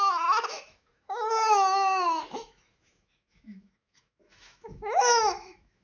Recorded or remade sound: remade